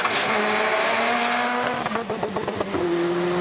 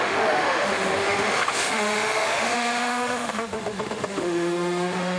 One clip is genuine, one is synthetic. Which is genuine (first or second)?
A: first